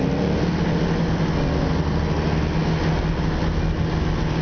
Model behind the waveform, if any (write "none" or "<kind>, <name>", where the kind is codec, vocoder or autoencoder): none